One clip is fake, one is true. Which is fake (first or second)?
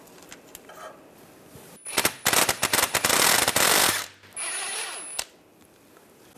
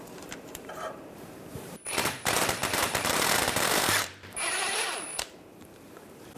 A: second